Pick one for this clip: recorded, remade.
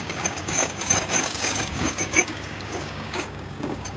remade